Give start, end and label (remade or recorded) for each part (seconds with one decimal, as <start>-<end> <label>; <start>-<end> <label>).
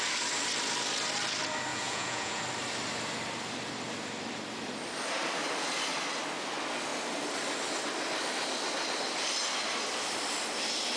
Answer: 0.0-1.7 recorded; 1.7-2.4 remade; 2.4-11.0 recorded